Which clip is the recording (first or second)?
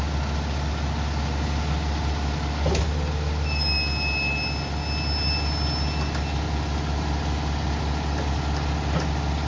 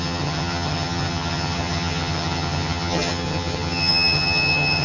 first